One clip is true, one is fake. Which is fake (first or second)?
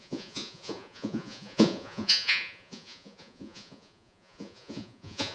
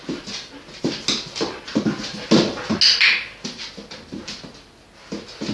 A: first